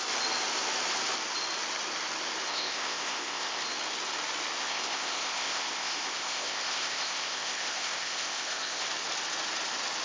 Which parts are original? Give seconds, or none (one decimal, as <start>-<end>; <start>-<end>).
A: 0.0-2.5; 3.6-4.6; 8.8-10.0